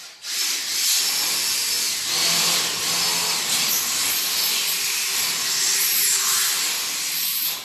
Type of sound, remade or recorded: recorded